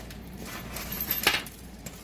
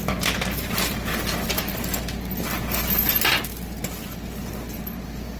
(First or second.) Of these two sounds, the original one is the second